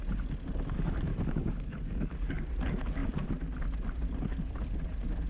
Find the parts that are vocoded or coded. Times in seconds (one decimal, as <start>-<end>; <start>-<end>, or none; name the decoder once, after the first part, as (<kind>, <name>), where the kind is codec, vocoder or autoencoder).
1.1-2.3 (codec, DAC)